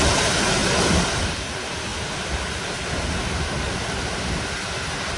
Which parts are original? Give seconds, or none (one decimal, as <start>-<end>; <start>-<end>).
0.0-5.2

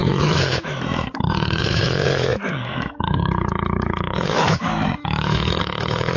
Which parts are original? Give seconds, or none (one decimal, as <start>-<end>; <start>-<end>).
none

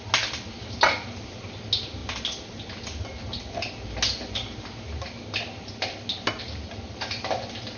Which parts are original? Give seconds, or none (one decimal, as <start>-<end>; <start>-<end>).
0.0-7.8